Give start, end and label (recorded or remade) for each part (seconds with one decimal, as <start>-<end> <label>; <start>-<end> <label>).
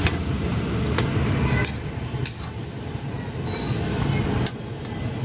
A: 0.0-5.2 recorded